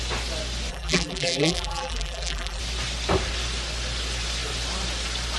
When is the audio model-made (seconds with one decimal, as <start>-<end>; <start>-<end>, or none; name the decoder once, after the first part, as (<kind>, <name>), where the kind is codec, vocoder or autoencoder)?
0.7-2.6 (vocoder, BigVGAN v2)